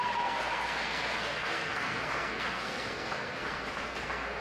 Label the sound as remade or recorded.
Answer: remade